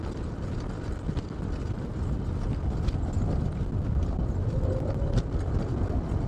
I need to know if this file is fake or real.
real